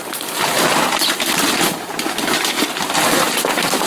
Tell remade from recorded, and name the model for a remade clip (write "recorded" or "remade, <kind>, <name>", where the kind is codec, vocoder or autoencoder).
remade, vocoder, BigVGAN v2